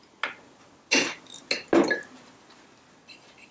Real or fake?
real